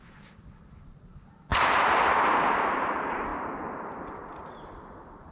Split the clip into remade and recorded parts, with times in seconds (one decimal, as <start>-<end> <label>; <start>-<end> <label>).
0.0-5.3 recorded